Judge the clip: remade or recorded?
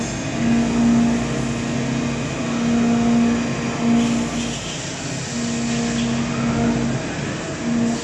recorded